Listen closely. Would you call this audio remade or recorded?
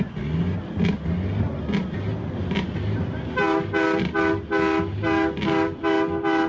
recorded